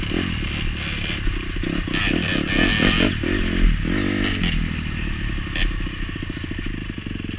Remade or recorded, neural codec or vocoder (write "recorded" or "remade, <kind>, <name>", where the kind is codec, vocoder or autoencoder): recorded